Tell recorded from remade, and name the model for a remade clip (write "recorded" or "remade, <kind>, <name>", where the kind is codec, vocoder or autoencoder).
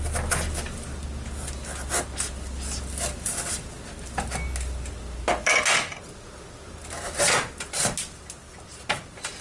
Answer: recorded